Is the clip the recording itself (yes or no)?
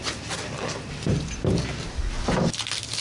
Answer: yes